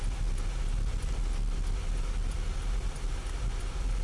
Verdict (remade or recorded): recorded